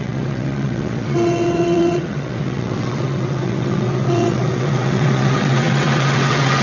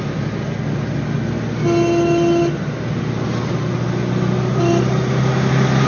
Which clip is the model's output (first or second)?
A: first